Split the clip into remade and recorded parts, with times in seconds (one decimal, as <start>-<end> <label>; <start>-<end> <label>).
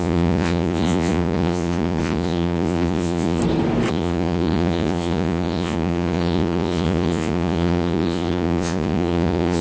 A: 0.0-3.4 remade; 3.4-3.9 recorded; 3.9-9.6 remade